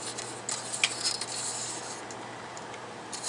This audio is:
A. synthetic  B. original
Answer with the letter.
B